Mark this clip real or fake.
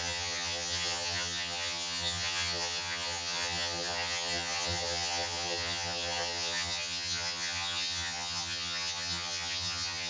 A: fake